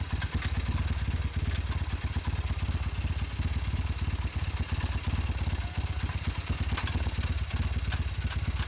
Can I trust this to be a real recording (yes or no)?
yes